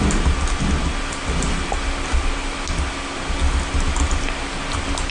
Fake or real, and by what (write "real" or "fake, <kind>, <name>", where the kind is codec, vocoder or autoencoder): real